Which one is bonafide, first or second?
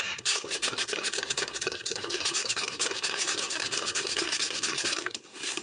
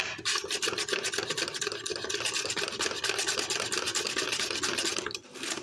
second